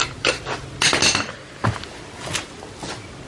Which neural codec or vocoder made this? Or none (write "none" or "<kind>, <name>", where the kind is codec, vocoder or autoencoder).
none